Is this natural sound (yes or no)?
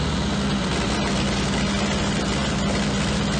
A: yes